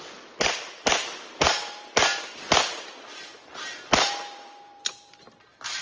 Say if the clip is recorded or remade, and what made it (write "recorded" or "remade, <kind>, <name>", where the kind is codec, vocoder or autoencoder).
remade, vocoder, BigVGAN v2